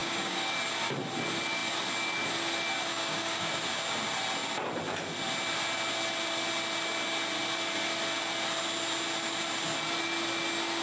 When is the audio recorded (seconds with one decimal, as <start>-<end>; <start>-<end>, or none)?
0.5-2.9; 3.5-10.8